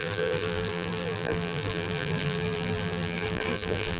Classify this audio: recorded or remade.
remade